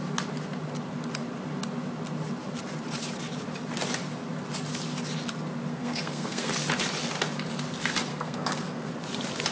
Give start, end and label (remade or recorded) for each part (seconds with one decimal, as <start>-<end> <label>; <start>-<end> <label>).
0.0-5.7 recorded; 5.7-6.5 remade; 6.5-8.1 recorded; 8.1-8.9 remade; 8.9-9.5 recorded

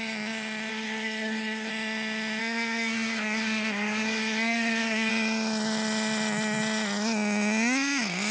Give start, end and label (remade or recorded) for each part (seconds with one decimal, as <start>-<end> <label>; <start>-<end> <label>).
0.0-0.7 recorded; 0.7-1.7 remade; 1.7-2.4 recorded; 2.4-5.1 remade; 5.1-8.3 recorded